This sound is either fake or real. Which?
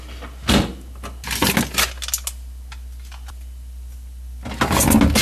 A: real